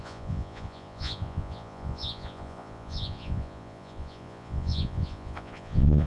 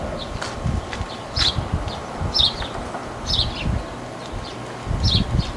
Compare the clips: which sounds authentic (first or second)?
second